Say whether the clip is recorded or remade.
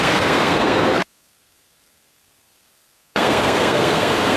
remade